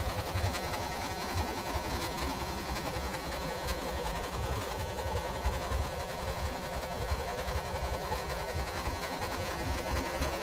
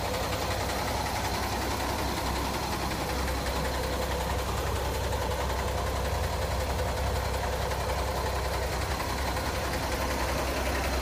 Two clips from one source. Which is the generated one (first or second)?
first